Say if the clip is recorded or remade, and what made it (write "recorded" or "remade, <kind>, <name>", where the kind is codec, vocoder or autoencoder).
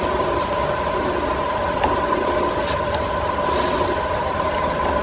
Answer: recorded